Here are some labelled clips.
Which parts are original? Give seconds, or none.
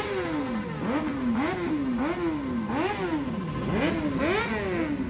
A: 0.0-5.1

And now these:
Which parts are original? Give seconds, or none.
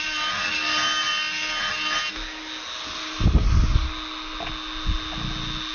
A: 0.0-5.7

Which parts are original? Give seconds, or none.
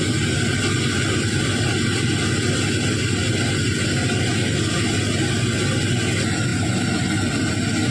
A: 0.0-6.5; 7.5-7.9